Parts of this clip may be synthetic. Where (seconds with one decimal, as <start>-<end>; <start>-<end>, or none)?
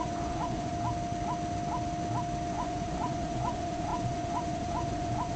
0.0-0.7; 2.5-5.4